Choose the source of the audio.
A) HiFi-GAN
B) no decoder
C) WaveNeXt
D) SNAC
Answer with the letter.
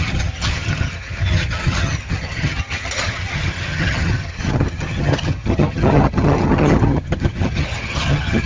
A